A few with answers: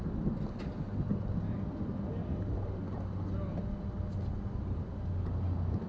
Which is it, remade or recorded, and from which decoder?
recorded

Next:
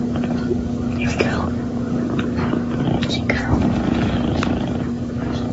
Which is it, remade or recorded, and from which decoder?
remade, codec, DAC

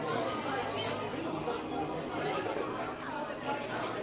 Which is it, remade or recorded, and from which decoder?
recorded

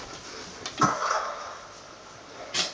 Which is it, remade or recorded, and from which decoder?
recorded